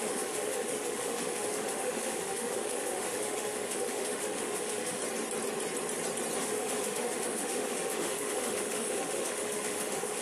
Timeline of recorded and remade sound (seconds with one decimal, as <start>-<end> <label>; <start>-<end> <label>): 0.0-5.0 remade; 5.0-6.4 recorded; 6.4-10.2 remade